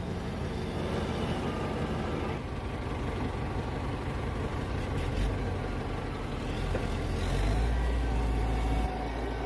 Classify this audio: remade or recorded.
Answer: recorded